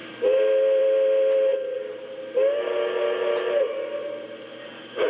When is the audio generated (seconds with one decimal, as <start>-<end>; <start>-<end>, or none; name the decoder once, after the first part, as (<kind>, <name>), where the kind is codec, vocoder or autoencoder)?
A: none